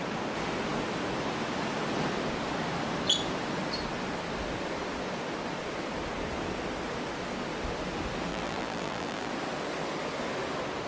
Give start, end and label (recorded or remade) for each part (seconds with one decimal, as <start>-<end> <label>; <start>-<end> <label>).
0.0-8.3 recorded; 8.3-9.3 remade; 9.3-10.9 recorded